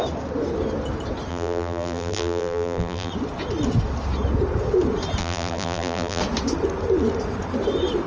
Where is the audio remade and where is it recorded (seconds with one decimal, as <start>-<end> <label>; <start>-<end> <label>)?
0.0-1.3 recorded; 1.3-3.1 remade; 3.1-5.2 recorded; 5.2-6.2 remade; 6.2-8.1 recorded